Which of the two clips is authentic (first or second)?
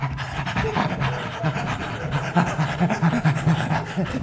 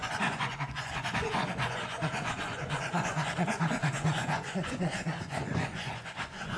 first